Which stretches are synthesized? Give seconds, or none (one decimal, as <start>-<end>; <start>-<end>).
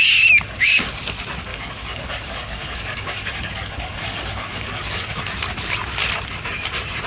1.5-5.1